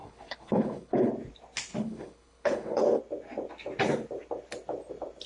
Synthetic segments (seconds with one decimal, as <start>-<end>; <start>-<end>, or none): 0.0-1.1; 1.7-3.0